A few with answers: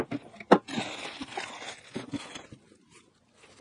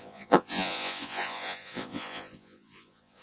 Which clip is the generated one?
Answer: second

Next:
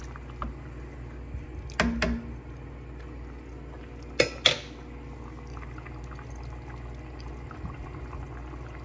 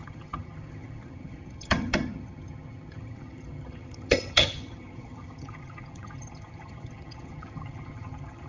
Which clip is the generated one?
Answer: second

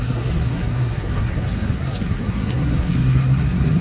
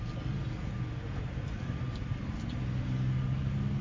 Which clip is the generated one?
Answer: first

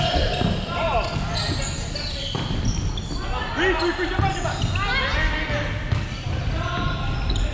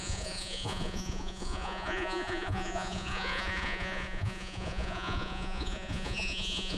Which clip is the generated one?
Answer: second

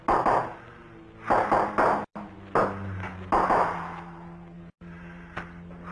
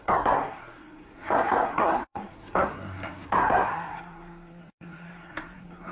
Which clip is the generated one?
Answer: second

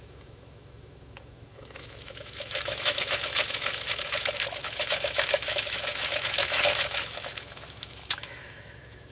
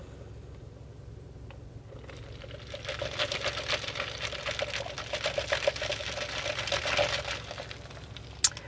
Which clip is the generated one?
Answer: first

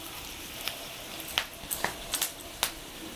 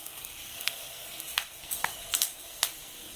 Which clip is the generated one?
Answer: second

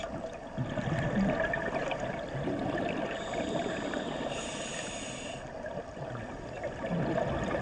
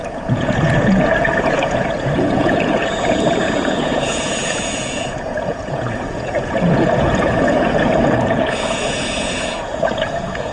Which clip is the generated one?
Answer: second